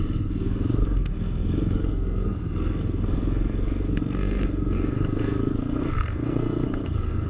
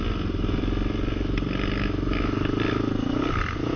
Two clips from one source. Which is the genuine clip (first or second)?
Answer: second